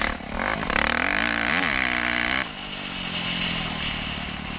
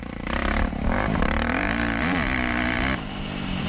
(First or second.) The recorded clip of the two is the first